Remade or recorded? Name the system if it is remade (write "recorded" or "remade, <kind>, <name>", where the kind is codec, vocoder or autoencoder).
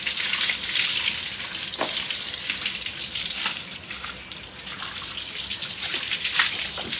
recorded